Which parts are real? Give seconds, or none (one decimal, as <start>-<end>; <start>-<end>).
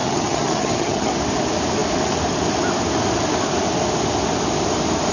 1.1-5.1